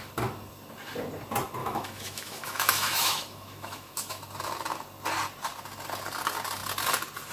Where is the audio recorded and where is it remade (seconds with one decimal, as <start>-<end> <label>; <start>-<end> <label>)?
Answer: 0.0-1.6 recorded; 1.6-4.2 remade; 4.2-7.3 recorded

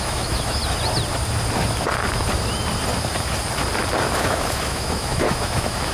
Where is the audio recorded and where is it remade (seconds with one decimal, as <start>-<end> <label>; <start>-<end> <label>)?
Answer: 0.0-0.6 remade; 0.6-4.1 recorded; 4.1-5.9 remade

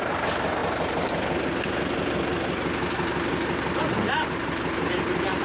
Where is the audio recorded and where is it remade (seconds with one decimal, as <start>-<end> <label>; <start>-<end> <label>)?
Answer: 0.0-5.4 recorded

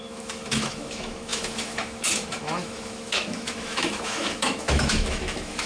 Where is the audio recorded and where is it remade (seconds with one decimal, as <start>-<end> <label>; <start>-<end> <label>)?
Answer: 0.0-5.7 remade

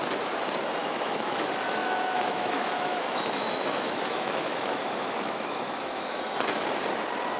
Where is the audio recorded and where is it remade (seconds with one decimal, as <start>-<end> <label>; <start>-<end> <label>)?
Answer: 0.0-0.8 recorded; 0.8-1.4 remade; 1.4-1.8 recorded; 1.8-6.2 remade; 6.2-7.4 recorded

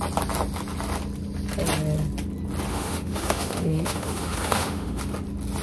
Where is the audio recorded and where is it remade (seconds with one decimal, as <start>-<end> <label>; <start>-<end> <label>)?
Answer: 0.0-2.7 recorded; 2.7-5.0 remade; 5.0-5.6 recorded